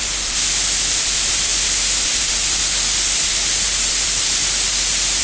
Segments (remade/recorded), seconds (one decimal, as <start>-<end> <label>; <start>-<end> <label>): 0.0-1.5 remade; 1.5-2.2 recorded; 2.2-2.6 remade; 2.6-3.6 recorded; 3.6-4.4 remade; 4.4-5.2 recorded